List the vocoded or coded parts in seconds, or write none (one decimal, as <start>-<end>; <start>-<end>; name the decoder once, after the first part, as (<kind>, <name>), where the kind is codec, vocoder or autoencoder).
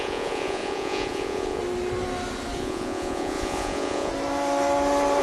0.0-1.6 (vocoder, Vocos); 2.6-4.1